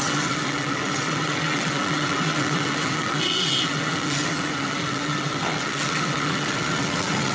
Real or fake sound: fake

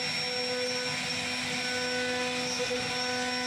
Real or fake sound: real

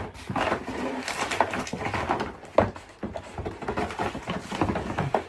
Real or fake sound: real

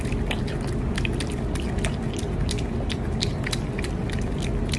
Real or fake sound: real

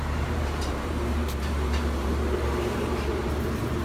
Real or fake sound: fake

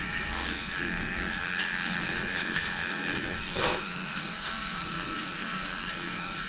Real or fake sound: fake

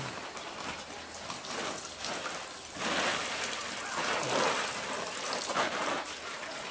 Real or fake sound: real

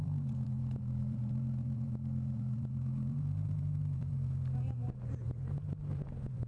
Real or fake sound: fake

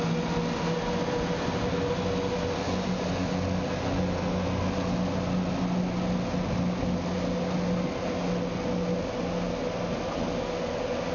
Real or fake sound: real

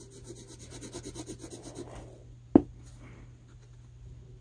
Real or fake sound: real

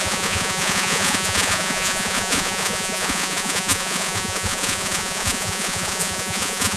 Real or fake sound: fake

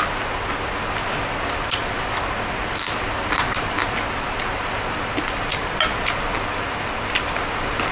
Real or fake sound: real